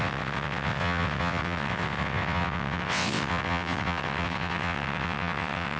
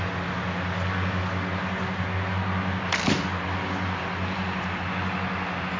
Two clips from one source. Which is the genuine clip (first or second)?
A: second